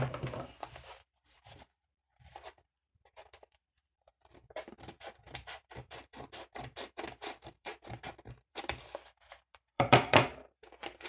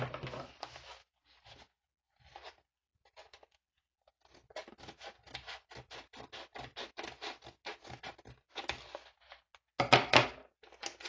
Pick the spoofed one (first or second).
first